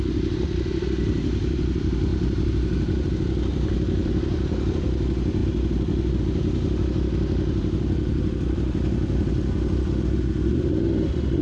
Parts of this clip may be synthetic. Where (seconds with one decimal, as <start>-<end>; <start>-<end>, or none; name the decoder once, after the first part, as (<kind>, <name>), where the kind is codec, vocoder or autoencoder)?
0.0-5.4 (vocoder, BigVGAN v2); 6.2-11.4